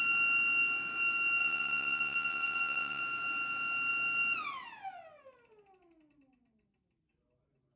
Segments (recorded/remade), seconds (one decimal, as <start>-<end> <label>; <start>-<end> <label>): 0.0-1.4 recorded; 1.4-3.0 remade; 3.0-7.8 recorded